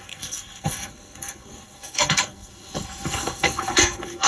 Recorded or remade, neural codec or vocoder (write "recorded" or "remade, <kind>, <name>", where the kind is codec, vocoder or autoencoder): remade, codec, SNAC